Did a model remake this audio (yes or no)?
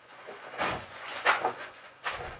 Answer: yes